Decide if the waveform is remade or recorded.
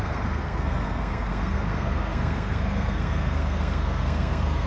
remade